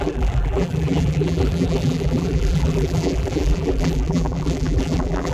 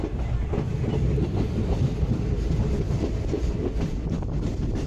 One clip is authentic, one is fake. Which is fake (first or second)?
first